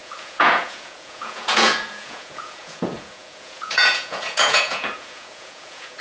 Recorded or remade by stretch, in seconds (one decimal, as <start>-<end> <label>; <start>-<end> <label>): 0.0-6.0 remade